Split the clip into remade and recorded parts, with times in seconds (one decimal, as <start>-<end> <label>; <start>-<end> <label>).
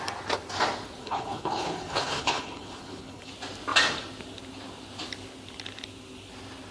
0.0-1.0 recorded; 1.0-3.3 remade; 3.3-6.7 recorded